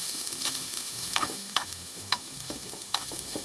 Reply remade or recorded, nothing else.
remade